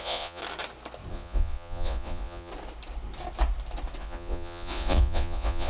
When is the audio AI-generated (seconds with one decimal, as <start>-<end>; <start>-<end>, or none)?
0.0-0.4; 1.1-2.5; 4.0-5.7